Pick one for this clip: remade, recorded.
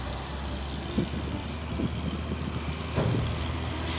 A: recorded